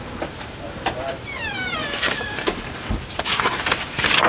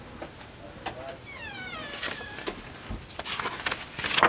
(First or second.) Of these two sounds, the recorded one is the second